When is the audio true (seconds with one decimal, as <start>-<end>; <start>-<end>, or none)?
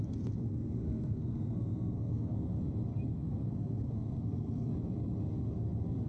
0.0-0.4; 2.6-3.1; 4.7-6.1